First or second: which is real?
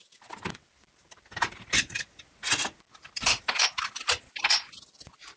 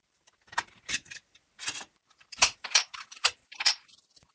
first